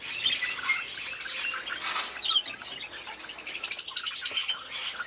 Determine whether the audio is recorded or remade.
recorded